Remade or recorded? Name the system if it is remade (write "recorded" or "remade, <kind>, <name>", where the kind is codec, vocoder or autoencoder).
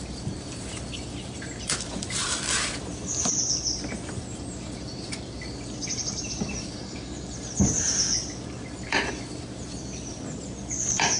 remade, vocoder, BigVGAN v2